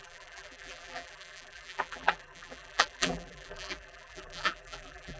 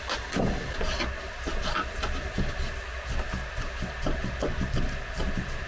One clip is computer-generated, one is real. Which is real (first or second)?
second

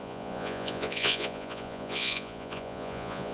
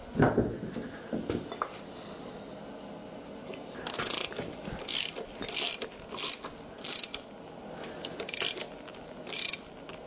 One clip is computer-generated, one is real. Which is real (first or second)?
second